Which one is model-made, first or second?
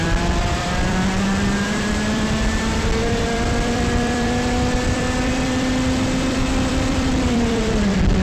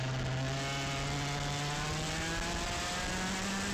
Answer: first